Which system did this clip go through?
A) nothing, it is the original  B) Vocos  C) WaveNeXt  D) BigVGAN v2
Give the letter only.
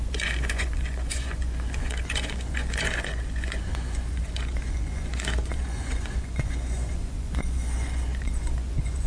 B